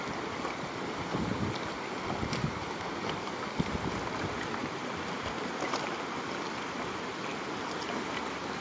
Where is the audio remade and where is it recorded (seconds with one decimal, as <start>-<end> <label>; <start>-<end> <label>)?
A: 0.0-1.1 recorded; 1.1-1.7 remade; 1.7-2.4 recorded; 2.4-3.1 remade; 3.1-4.6 recorded; 4.6-5.5 remade; 5.5-8.6 recorded